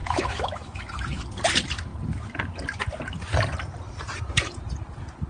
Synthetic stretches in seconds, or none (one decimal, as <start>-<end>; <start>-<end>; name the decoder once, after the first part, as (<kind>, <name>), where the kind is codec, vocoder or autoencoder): 0.0-1.2 (autoencoder, DAC-VAE)